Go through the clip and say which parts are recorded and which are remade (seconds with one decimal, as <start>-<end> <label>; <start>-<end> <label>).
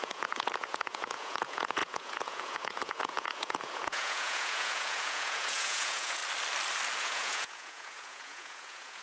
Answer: 0.0-6.2 remade; 6.2-7.0 recorded; 7.0-9.0 remade